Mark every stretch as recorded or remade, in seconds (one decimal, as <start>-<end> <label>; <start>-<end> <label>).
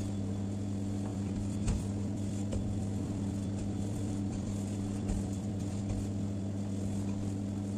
0.0-1.1 recorded; 1.1-5.8 remade; 5.8-7.8 recorded